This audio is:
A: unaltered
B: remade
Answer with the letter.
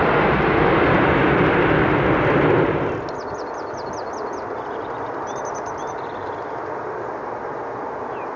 A